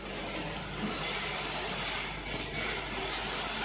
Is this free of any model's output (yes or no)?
yes